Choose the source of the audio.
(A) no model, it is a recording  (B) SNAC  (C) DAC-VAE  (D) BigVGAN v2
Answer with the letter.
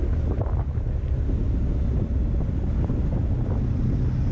A